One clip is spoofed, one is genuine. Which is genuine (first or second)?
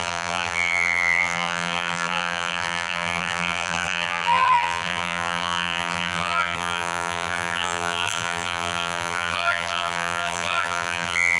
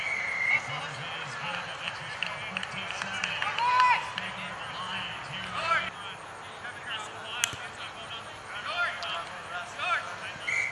second